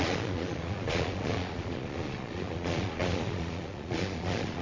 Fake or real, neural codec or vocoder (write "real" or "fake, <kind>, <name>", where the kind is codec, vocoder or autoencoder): fake, vocoder, Vocos